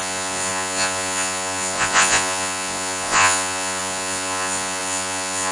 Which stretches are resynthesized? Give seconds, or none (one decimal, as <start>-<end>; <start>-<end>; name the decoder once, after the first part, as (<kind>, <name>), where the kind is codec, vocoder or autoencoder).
0.0-5.5 (vocoder, Vocos)